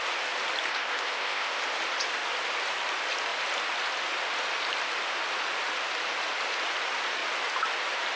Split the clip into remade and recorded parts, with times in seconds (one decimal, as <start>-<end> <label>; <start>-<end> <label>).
0.0-0.7 recorded; 0.7-1.6 remade; 1.6-8.2 recorded